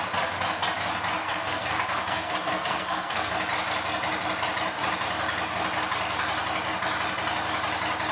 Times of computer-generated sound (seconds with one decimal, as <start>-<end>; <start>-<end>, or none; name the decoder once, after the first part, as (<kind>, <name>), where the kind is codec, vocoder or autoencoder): 1.2-3.3 (codec, SNAC)